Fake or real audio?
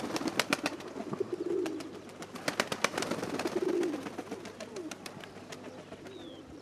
real